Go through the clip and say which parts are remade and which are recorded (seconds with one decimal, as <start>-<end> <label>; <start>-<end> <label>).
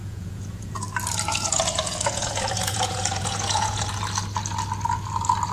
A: 0.0-0.8 remade; 0.8-1.3 recorded; 1.3-3.8 remade; 3.8-5.5 recorded